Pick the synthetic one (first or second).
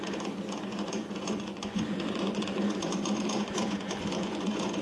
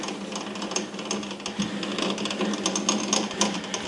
first